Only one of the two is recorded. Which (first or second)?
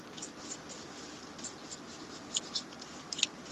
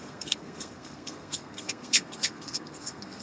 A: first